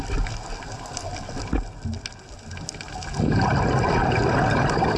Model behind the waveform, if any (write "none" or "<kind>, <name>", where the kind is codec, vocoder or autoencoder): none